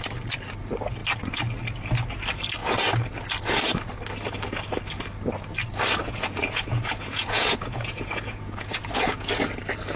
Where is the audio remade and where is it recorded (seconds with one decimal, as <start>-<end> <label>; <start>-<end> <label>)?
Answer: 0.0-6.0 recorded; 6.0-9.3 remade; 9.3-10.0 recorded